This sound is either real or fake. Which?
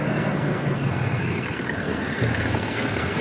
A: fake